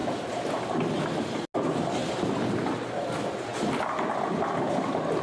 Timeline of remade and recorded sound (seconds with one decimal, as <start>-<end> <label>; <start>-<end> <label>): 0.0-5.2 recorded